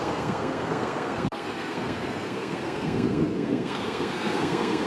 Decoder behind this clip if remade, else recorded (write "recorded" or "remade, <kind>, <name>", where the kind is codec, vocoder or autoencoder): remade, codec, SNAC